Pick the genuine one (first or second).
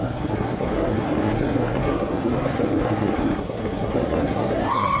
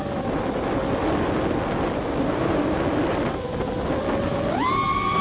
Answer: second